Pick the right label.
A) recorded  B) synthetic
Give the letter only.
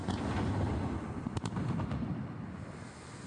A